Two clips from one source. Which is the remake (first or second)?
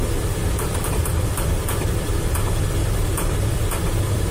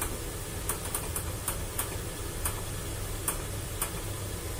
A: first